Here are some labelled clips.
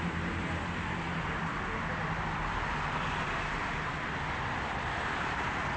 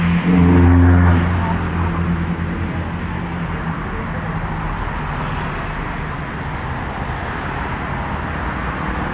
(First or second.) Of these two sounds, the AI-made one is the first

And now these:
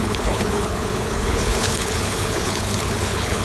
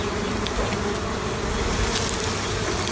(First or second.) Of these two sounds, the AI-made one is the first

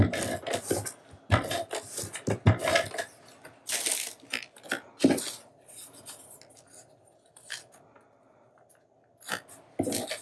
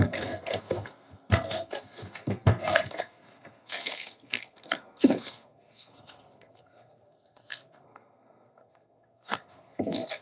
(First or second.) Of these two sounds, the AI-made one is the second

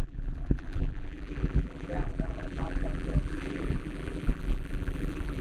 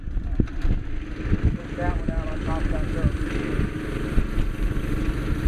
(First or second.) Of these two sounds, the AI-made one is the first